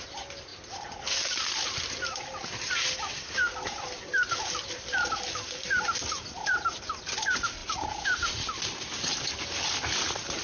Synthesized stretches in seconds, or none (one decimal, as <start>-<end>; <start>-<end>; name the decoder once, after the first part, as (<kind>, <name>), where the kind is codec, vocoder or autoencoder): none